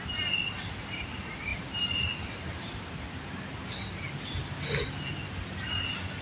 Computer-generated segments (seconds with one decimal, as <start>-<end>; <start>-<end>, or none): none